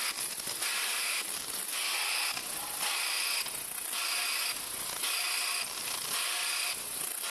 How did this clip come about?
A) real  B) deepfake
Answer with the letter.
A